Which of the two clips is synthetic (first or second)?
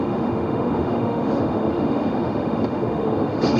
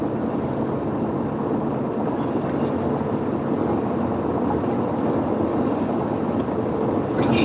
first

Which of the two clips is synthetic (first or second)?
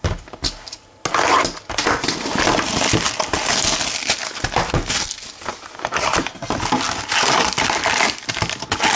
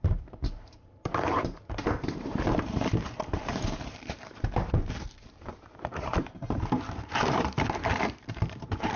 second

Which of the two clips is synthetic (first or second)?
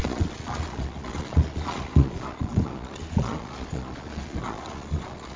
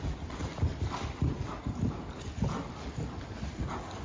first